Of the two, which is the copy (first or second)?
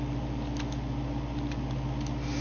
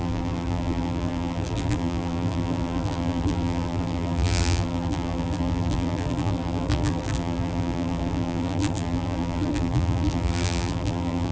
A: second